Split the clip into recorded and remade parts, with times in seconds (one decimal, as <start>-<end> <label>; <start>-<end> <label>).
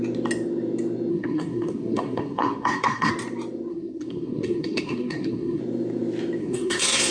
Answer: 0.0-1.1 recorded; 1.1-3.1 remade; 3.1-3.7 recorded; 3.7-5.6 remade; 5.6-6.4 recorded; 6.4-7.1 remade